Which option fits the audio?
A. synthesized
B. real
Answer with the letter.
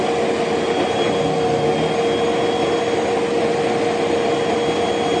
B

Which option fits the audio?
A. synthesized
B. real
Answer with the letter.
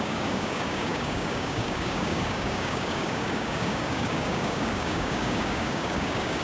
A